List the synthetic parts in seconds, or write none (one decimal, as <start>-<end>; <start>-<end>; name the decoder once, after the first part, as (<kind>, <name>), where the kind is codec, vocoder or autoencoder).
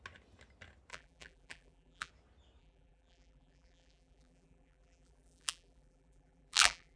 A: 0.9-2.1 (vocoder, BigVGAN v2); 2.6-7.0